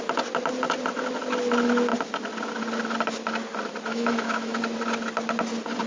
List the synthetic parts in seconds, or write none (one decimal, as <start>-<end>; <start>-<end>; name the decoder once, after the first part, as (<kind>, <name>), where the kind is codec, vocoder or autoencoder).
3.9-4.6 (autoencoder, DAC-VAE)